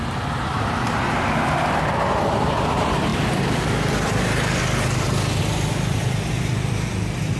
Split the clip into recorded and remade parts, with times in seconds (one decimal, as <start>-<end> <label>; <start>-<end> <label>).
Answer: 0.0-7.4 recorded